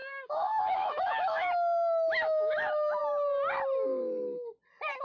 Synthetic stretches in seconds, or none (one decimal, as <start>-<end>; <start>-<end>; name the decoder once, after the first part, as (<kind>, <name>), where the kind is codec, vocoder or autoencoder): 0.6-3.0 (autoencoder, DAC-VAE)